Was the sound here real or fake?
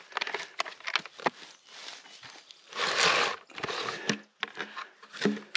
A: real